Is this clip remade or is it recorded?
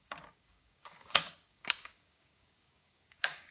remade